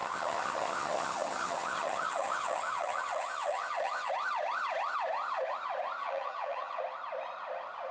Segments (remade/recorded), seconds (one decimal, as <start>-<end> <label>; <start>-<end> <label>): 0.0-4.1 remade; 4.1-6.0 recorded; 6.0-6.8 remade; 6.8-7.9 recorded